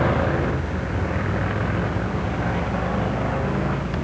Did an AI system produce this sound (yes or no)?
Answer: no